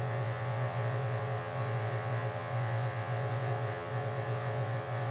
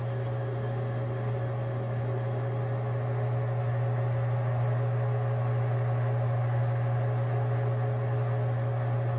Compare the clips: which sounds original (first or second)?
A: second